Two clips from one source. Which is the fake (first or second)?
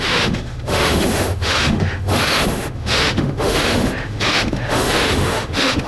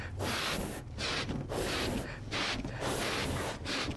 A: first